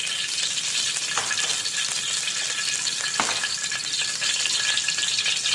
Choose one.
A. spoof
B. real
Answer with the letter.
B